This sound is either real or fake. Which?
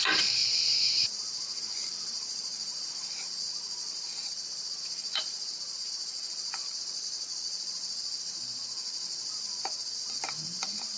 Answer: fake